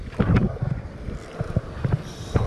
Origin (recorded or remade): recorded